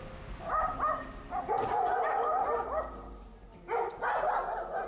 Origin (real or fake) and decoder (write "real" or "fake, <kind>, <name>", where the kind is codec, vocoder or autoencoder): real